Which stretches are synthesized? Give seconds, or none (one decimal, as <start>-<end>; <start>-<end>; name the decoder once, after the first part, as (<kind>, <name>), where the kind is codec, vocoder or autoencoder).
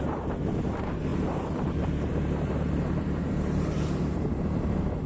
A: 0.0-5.1 (vocoder, BigVGAN v2)